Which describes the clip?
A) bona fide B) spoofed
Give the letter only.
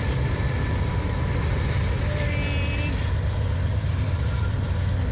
A